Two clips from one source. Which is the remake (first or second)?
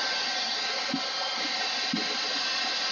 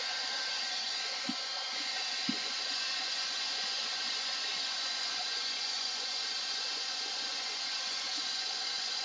second